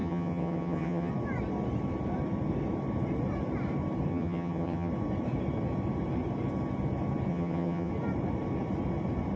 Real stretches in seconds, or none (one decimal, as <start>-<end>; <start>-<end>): 1.1-4.1; 4.9-7.3; 7.9-9.4